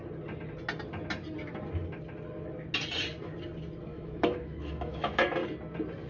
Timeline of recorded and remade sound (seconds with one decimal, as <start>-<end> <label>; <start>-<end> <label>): 0.0-3.9 recorded; 3.9-5.1 remade; 5.1-6.1 recorded